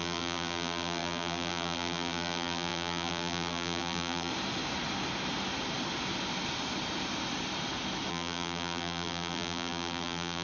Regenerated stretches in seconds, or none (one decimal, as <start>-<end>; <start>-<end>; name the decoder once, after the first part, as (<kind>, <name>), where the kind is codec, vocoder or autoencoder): 0.0-4.3 (vocoder, BigVGAN v2); 8.1-10.4